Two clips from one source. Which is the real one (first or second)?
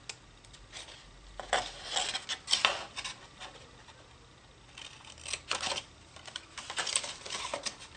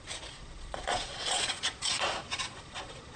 first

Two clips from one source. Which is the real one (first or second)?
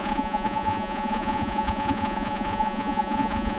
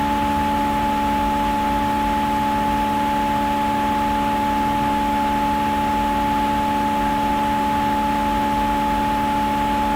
second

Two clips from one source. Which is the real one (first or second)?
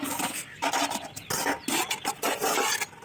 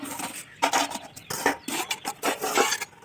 second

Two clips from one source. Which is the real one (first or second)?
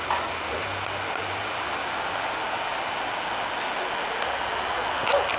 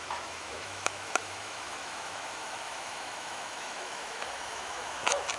first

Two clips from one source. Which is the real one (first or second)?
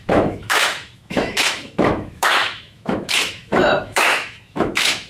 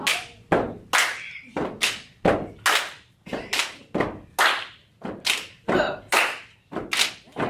second